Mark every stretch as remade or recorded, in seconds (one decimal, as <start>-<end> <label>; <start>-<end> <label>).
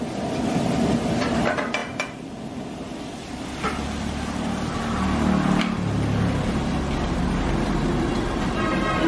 0.0-9.1 recorded